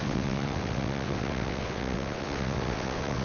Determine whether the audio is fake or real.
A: fake